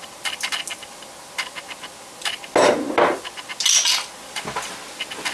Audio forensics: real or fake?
real